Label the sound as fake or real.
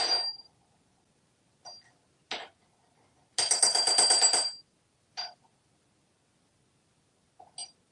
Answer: real